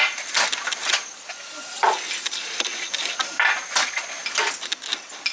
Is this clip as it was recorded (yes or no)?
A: yes